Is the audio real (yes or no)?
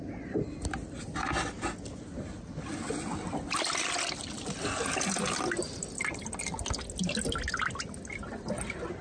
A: yes